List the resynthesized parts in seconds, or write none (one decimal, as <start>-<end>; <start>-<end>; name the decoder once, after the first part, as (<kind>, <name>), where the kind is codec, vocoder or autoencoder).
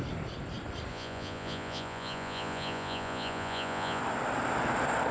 0.9-4.0 (vocoder, Vocos)